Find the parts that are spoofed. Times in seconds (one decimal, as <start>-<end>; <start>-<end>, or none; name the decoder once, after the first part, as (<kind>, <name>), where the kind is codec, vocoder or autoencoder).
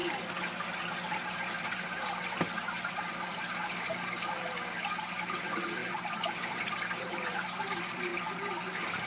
none